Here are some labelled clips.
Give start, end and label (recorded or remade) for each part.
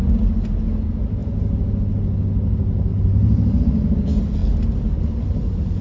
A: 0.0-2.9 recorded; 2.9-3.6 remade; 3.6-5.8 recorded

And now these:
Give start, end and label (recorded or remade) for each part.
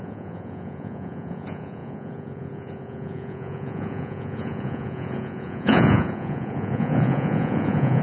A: 0.0-8.0 remade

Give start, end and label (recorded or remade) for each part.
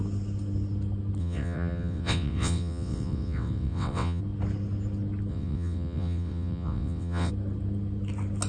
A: 0.0-1.2 recorded; 1.2-4.2 remade; 4.2-5.3 recorded; 5.3-7.3 remade; 7.3-8.5 recorded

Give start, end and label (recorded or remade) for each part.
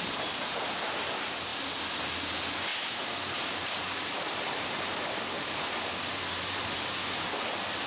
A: 0.0-2.7 recorded; 2.7-4.7 remade; 4.7-7.9 recorded